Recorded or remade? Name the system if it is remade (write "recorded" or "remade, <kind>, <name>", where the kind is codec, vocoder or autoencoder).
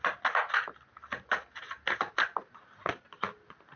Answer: recorded